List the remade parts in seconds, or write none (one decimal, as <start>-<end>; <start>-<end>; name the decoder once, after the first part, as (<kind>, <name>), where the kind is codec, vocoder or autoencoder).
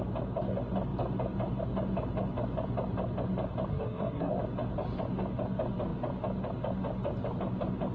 3.7-4.3 (codec, SNAC)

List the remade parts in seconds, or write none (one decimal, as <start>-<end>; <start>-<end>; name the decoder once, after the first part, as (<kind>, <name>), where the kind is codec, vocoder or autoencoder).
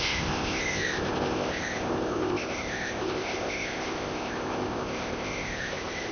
0.0-6.1 (codec, ZipCodec)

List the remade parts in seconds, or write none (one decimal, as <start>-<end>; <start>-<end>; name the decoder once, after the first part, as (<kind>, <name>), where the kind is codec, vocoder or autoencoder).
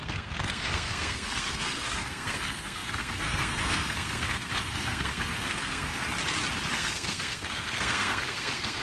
0.0-6.0 (codec, SNAC); 6.7-8.8